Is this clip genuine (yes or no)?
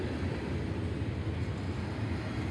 yes